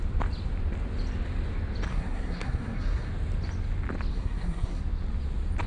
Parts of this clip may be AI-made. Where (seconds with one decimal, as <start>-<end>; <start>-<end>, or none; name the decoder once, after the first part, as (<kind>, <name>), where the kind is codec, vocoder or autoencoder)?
1.9-3.1 (codec, SNAC); 4.1-4.8